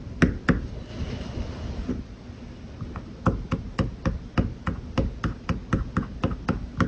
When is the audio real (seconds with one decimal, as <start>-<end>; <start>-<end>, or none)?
0.0-6.9